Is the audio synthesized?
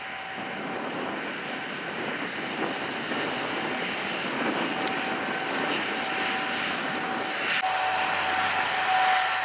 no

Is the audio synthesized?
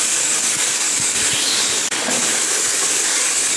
yes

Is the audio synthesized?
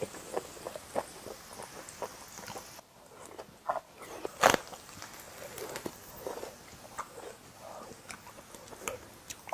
no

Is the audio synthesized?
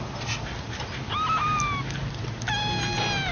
no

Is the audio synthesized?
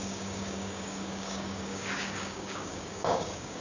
yes